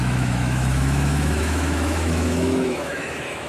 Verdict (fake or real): fake